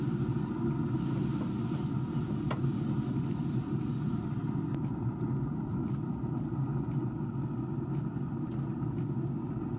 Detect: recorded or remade recorded